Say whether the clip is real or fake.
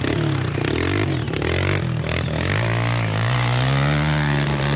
real